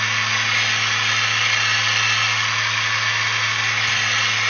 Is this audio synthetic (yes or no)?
no